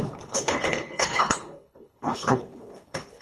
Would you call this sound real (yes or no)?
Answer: no